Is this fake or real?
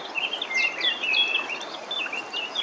real